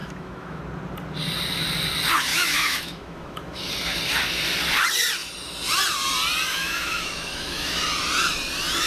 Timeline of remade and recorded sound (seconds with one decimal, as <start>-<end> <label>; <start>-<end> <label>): 0.0-0.6 remade; 0.6-2.3 recorded; 2.3-3.7 remade; 3.7-6.5 recorded; 6.5-7.8 remade; 7.8-8.9 recorded

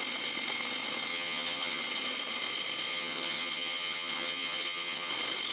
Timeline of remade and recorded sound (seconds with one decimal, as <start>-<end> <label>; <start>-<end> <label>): 0.0-1.1 recorded; 1.1-1.8 remade; 1.8-2.9 recorded; 2.9-5.1 remade; 5.1-5.5 recorded

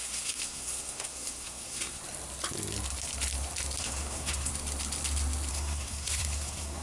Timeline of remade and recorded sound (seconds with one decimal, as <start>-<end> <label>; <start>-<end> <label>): 0.0-2.0 remade; 2.0-3.8 recorded; 3.8-4.5 remade; 4.5-5.5 recorded; 5.5-6.8 remade

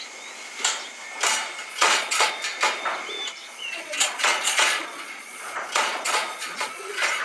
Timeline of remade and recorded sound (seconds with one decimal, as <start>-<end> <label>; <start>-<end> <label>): 0.0-1.7 recorded; 1.7-2.3 remade; 2.3-3.4 recorded; 3.4-7.2 remade

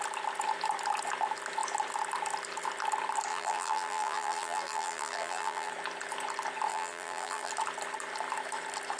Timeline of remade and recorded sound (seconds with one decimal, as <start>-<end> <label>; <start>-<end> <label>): 0.0-3.3 recorded; 3.3-5.7 remade; 5.7-6.7 recorded; 6.7-7.5 remade; 7.5-9.0 recorded

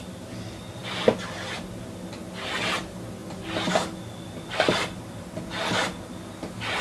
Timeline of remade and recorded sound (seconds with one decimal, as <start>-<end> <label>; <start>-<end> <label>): 0.0-6.8 recorded

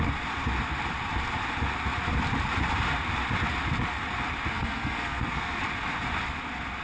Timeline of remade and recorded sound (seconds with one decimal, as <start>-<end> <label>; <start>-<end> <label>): 0.0-4.5 recorded; 4.5-5.6 remade; 5.6-6.8 recorded

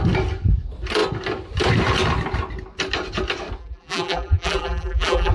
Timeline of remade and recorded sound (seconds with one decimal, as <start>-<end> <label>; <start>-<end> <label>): 0.0-3.6 recorded; 3.6-5.3 remade